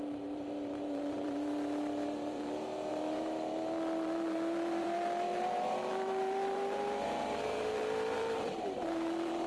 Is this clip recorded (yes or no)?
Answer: no